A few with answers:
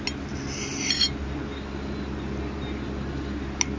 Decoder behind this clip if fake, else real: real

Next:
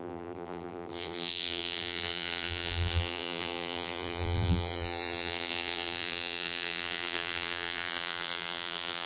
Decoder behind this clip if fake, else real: fake, vocoder, BigVGAN v2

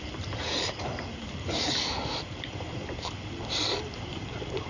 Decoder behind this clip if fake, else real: fake, vocoder, BigVGAN v2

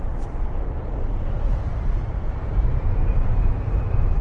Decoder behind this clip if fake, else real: fake, vocoder, BigVGAN v2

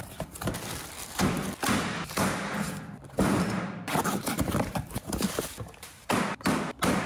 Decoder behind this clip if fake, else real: fake, vocoder, BigVGAN v2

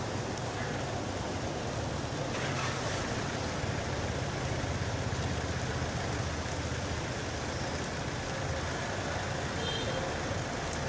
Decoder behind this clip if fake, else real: real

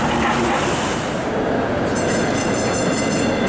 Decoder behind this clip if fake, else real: real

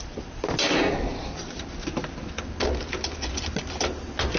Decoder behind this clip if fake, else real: real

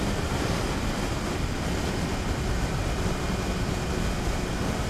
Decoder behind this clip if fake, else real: real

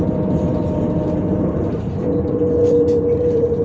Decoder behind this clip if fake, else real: fake, vocoder, BigVGAN v2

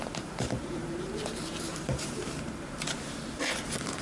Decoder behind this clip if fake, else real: fake, vocoder, BigVGAN v2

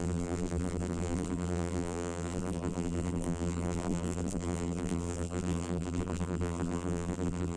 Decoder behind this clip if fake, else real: fake, vocoder, BigVGAN v2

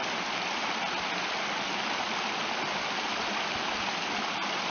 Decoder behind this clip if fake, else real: real